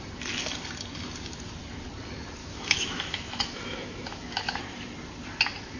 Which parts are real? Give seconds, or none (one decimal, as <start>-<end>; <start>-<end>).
0.0-2.4; 4.6-5.8